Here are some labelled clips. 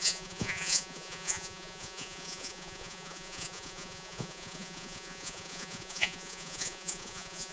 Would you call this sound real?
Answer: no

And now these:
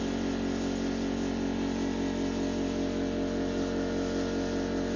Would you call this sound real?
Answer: yes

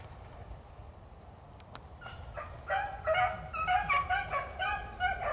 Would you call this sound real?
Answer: yes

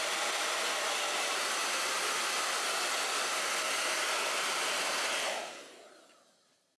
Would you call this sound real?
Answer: yes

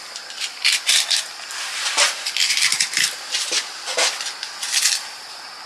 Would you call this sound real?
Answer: yes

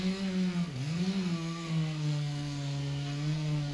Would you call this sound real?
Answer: no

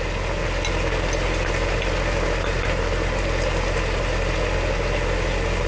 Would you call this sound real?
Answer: yes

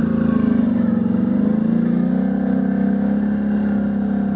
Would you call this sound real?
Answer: yes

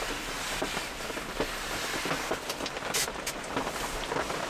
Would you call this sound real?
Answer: yes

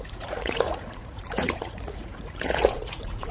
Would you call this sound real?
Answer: no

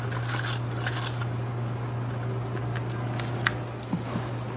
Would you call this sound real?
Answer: yes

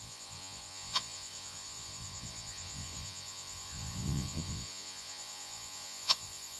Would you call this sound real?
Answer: no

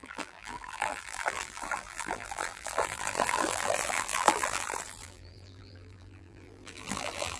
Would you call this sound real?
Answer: no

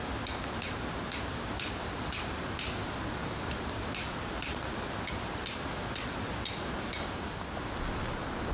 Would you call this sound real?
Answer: yes